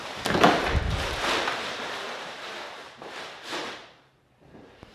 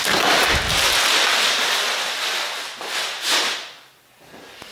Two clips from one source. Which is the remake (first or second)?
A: first